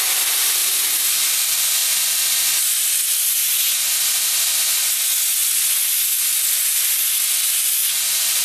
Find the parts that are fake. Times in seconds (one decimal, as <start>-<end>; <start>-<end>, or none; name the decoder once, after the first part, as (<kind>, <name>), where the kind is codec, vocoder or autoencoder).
none